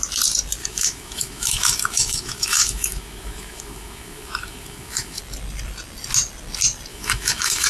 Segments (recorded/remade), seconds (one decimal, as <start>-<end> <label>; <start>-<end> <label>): 0.0-0.6 recorded; 0.6-5.2 remade; 5.2-6.9 recorded; 6.9-7.7 remade